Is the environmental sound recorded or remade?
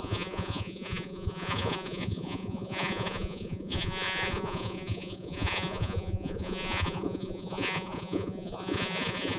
remade